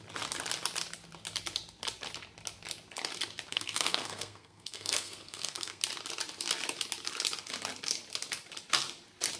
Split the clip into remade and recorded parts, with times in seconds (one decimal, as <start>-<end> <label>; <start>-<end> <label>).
0.0-3.5 recorded; 3.5-5.8 remade; 5.8-9.4 recorded